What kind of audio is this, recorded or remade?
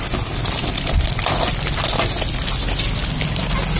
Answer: recorded